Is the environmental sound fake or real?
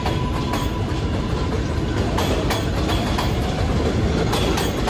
real